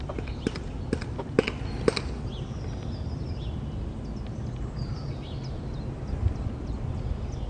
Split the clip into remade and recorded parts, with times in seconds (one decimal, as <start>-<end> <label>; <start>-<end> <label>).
0.0-7.5 recorded